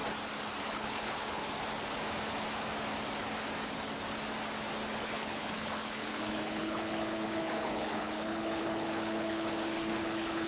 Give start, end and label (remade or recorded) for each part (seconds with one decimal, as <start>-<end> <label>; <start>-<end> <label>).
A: 0.0-0.6 recorded; 0.6-1.4 remade; 1.4-5.0 recorded; 5.0-10.5 remade